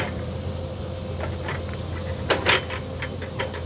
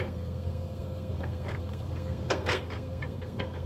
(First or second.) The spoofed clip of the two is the second